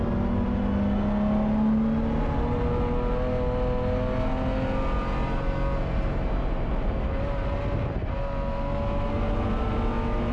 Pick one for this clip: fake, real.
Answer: real